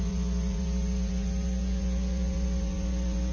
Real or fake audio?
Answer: fake